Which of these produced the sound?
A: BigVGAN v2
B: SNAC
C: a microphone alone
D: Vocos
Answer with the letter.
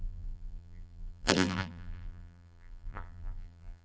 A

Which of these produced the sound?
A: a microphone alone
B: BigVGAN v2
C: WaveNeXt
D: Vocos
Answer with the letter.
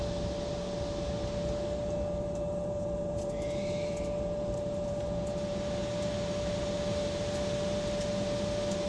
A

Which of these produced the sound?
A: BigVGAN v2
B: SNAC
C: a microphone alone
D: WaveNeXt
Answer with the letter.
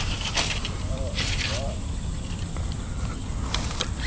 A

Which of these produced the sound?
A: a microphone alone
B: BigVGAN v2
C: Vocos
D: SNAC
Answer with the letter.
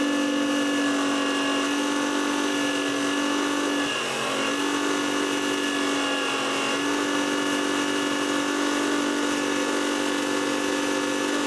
A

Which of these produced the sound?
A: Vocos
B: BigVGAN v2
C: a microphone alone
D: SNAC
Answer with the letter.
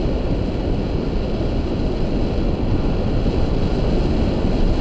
C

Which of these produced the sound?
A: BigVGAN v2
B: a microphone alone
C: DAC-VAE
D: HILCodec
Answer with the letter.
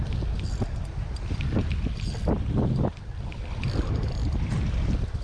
B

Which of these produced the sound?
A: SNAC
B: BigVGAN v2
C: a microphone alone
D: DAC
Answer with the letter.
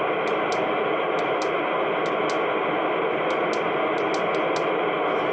C